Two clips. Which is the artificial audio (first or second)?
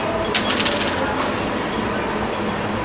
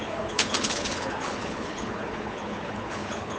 second